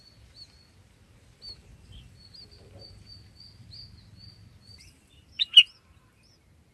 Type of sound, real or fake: real